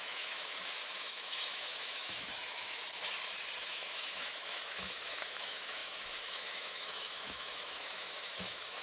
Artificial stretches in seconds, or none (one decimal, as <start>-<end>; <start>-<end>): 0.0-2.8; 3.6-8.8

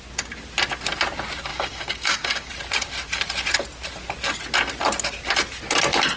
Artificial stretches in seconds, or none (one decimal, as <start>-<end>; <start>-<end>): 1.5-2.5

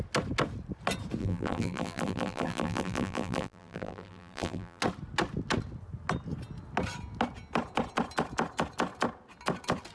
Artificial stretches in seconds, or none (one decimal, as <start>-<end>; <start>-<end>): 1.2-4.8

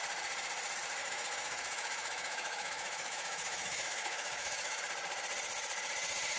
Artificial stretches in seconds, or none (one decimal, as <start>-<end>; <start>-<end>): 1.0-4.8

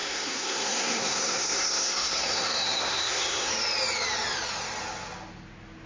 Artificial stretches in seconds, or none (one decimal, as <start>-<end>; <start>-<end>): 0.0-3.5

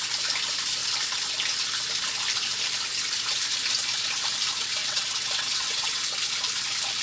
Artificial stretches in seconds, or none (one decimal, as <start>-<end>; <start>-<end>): 4.8-6.0

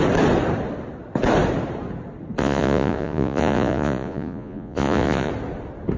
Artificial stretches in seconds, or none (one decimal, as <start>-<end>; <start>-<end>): 2.4-5.3